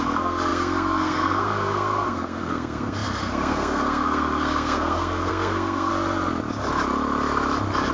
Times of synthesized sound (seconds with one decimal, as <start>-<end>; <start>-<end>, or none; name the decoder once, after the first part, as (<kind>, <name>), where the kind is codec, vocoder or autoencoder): 0.0-5.9 (codec, SNAC)